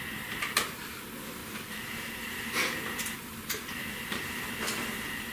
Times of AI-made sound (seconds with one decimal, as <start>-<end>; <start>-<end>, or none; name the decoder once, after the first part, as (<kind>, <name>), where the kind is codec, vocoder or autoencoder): 1.4-4.5 (vocoder, BigVGAN v2)